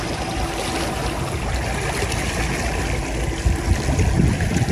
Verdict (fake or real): real